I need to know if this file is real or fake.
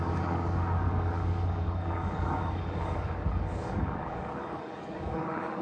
fake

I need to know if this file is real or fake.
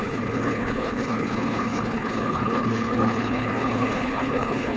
fake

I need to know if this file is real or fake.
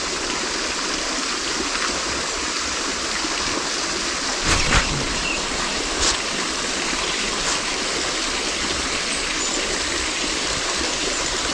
real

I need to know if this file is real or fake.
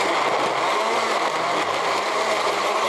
real